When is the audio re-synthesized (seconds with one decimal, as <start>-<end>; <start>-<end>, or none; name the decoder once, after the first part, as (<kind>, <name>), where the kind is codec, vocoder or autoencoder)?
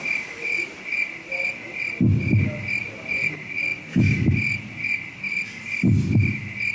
none